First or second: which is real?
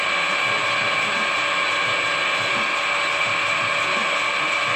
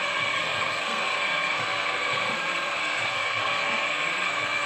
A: first